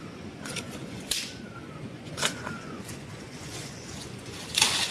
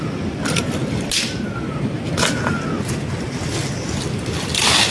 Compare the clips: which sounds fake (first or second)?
first